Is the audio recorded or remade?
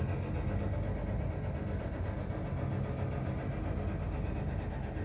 recorded